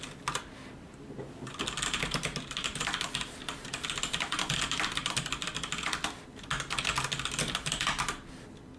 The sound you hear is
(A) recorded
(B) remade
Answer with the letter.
A